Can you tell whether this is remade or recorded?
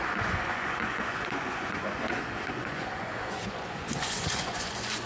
remade